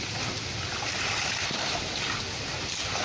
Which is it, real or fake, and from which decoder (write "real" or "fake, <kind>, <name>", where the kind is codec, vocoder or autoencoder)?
real